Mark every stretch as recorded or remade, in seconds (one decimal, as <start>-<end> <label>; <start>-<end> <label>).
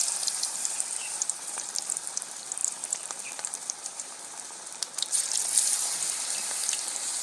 0.0-7.2 remade